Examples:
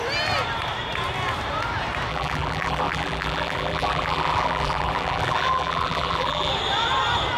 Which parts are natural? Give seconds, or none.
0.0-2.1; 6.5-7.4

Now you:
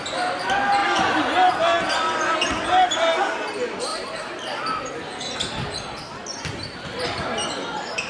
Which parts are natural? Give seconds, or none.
0.0-0.8; 1.5-8.1

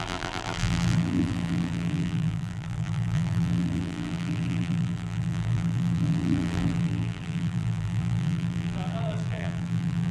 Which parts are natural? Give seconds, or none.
none

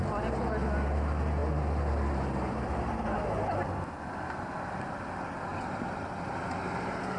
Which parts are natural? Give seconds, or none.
0.0-5.5; 6.3-7.2

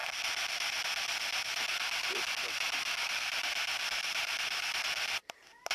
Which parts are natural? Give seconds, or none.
0.0-5.7